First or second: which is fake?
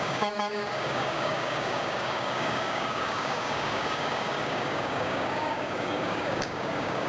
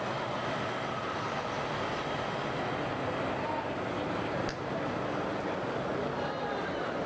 first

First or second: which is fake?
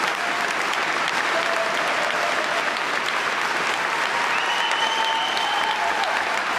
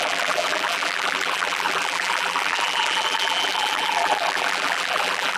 second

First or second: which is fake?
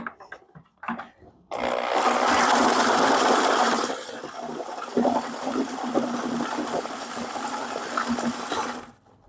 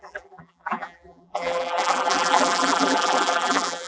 second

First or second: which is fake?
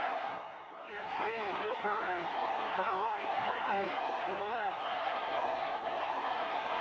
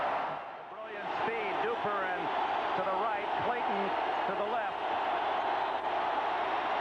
first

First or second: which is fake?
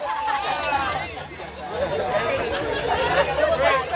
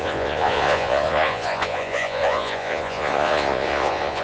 second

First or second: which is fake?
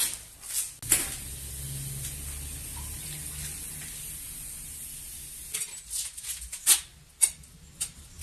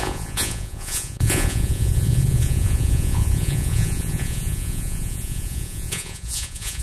second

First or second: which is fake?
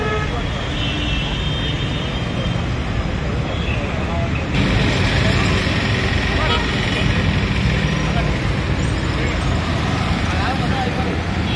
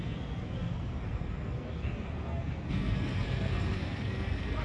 second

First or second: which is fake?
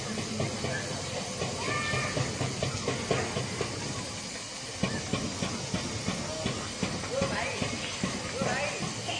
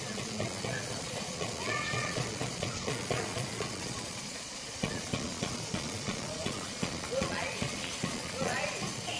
second